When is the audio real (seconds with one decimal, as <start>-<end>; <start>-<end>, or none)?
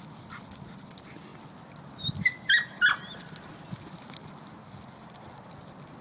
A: 0.0-6.0